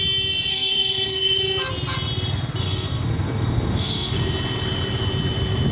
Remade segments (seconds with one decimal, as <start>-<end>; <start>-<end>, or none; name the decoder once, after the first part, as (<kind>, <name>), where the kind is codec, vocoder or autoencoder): 0.5-1.4 (codec, SNAC); 2.6-4.2